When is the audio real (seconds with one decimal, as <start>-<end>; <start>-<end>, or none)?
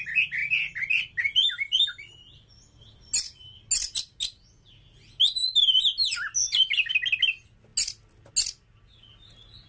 0.0-9.7